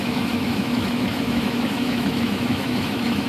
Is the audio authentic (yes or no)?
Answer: no